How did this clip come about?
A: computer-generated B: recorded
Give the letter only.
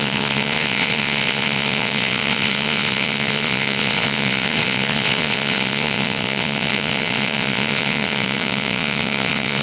A